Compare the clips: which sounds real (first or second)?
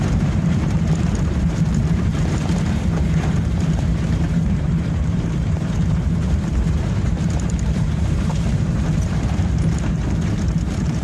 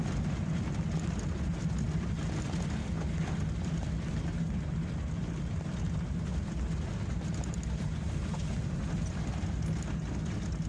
second